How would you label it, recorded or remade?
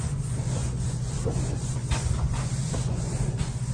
remade